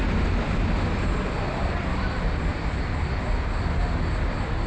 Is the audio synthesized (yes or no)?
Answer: no